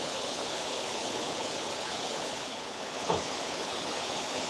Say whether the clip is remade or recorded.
remade